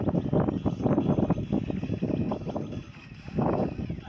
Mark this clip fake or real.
real